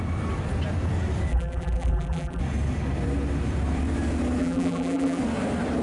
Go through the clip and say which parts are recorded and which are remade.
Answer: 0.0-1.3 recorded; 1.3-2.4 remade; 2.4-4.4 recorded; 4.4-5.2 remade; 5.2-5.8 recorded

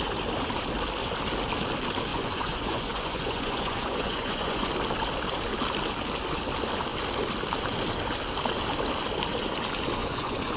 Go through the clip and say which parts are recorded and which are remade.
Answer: 0.0-2.1 recorded; 2.1-4.7 remade; 4.7-10.0 recorded; 10.0-10.6 remade

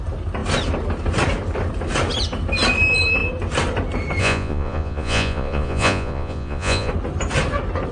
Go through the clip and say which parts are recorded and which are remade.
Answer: 0.0-4.2 recorded; 4.2-6.9 remade; 6.9-7.9 recorded

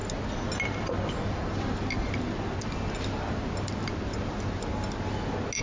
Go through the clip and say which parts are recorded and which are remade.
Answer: 0.0-5.6 recorded